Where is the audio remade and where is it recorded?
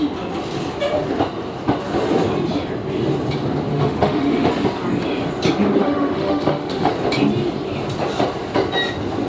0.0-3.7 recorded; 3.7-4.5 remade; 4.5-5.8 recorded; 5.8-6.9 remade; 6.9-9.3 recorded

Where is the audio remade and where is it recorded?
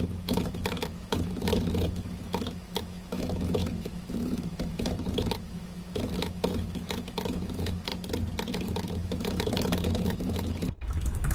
0.0-7.9 remade; 7.9-8.5 recorded; 8.5-11.3 remade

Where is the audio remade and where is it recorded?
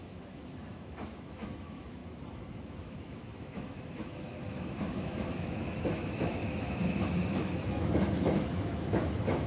0.0-2.0 remade; 2.0-2.6 recorded; 2.6-9.5 remade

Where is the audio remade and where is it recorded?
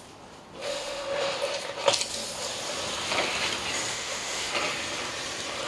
0.0-0.7 recorded; 0.7-1.4 remade; 1.4-3.9 recorded; 3.9-4.5 remade; 4.5-5.7 recorded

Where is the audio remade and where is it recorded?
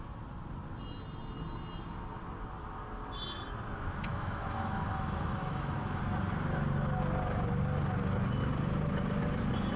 0.0-4.1 recorded; 4.1-6.0 remade; 6.0-9.8 recorded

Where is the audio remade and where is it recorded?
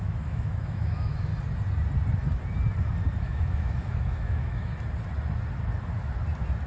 0.0-1.3 remade; 1.3-3.2 recorded; 3.2-4.7 remade; 4.7-6.7 recorded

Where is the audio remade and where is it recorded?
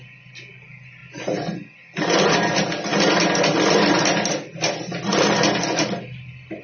0.0-6.6 recorded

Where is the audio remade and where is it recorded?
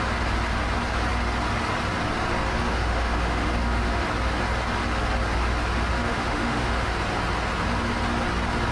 0.0-2.5 recorded; 2.5-4.0 remade; 4.0-5.9 recorded; 5.9-6.9 remade; 6.9-8.7 recorded